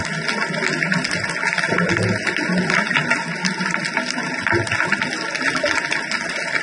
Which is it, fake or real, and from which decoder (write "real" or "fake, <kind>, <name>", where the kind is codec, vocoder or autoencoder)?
real